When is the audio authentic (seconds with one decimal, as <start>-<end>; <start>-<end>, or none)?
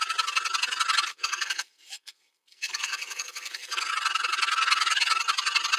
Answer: 0.0-1.1; 3.9-5.8